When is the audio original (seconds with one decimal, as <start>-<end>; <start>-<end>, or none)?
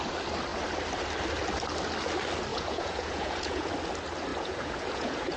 0.0-2.5; 3.7-4.3